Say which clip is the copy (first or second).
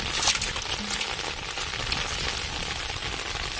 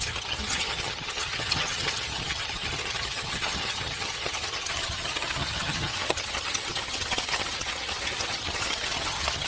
second